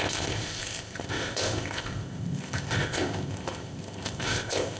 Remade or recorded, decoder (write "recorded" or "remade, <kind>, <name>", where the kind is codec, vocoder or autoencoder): remade, codec, ZipCodec